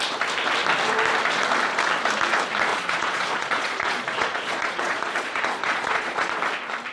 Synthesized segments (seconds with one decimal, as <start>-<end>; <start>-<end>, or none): 2.7-6.4